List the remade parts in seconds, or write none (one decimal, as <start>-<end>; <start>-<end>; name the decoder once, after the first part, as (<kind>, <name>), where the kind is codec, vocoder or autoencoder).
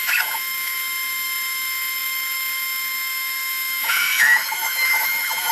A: 0.0-5.5 (autoencoder, DAC-VAE)